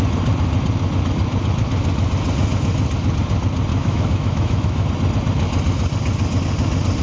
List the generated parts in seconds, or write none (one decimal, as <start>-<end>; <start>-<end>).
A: 3.7-4.9

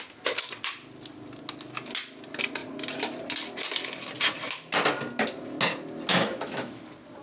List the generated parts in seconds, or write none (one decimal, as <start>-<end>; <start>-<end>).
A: 6.1-6.8